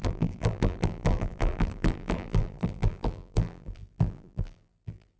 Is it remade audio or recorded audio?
remade